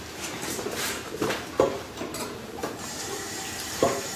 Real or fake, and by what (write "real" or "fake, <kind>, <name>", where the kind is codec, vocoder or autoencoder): fake, vocoder, BigVGAN v2